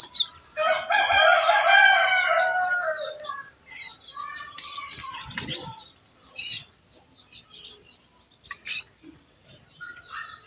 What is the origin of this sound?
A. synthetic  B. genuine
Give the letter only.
B